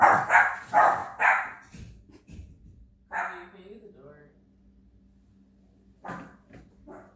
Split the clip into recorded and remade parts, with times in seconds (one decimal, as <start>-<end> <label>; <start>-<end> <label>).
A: 0.0-7.2 recorded